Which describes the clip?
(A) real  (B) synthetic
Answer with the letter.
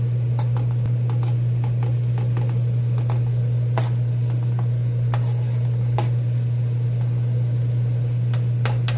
A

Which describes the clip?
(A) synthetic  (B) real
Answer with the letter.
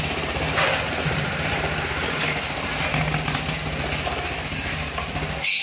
B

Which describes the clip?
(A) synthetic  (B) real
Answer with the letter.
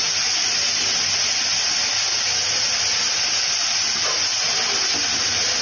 B